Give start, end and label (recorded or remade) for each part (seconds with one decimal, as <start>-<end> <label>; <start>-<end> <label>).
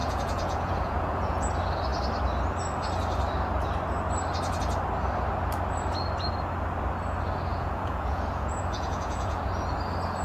0.0-1.5 remade; 1.5-7.5 recorded; 7.5-9.5 remade; 9.5-10.2 recorded